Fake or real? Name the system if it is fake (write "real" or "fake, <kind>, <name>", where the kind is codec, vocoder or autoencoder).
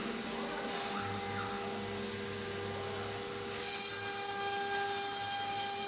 real